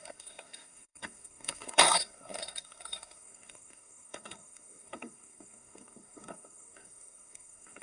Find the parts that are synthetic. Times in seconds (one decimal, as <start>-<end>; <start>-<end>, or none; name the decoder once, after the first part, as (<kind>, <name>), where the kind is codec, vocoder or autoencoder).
0.0-7.8 (codec, SNAC)